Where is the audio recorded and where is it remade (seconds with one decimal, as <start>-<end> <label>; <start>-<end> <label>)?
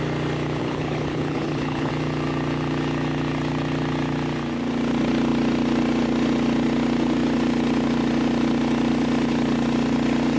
0.0-0.6 recorded; 0.6-1.9 remade; 1.9-10.4 recorded